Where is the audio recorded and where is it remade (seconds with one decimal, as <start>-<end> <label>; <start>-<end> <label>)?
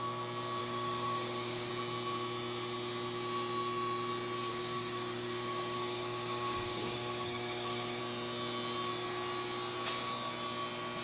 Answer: 0.0-0.6 recorded; 0.6-1.7 remade; 1.7-4.5 recorded; 4.5-8.0 remade; 8.0-11.0 recorded